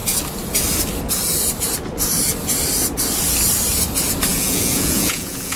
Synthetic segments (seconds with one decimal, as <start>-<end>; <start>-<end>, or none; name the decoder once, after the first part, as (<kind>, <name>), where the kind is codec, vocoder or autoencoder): 4.3-5.6 (vocoder, Vocos)